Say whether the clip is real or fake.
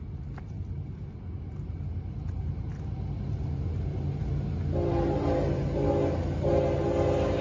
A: real